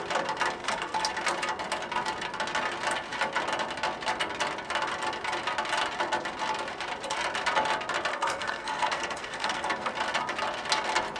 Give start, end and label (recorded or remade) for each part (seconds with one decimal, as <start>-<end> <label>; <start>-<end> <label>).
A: 0.0-0.6 recorded; 0.6-1.1 remade; 1.1-8.1 recorded; 8.1-9.9 remade; 9.9-11.2 recorded